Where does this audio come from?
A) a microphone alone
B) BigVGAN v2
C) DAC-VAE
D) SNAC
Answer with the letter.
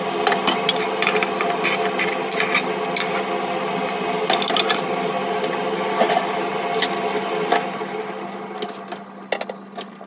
A